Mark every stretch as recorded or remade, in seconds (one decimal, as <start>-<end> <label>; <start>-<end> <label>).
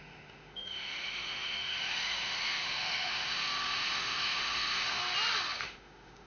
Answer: 0.0-5.0 remade; 5.0-5.6 recorded; 5.6-6.3 remade